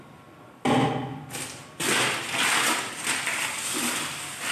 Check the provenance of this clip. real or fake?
real